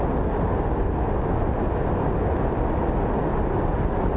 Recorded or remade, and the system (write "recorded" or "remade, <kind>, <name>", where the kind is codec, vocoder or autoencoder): recorded